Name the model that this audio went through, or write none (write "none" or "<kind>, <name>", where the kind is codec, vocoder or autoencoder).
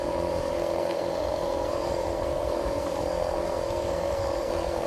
codec, SNAC